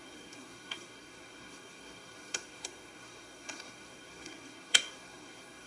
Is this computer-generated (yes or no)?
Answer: yes